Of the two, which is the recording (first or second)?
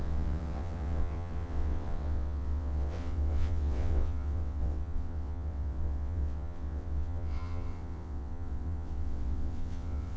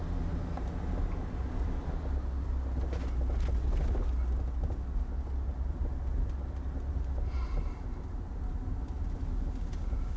second